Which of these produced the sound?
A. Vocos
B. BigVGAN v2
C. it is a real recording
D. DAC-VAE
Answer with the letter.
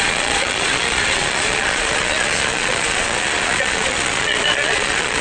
A